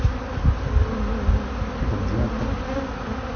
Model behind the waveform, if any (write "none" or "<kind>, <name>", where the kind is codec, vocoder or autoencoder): none